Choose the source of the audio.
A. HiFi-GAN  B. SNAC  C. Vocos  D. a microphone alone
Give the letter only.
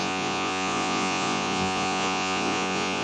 C